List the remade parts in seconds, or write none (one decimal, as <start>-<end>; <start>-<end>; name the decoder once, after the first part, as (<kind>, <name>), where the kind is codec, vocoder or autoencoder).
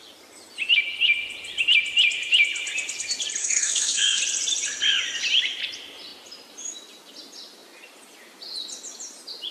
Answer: 3.4-4.2 (codec, SNAC)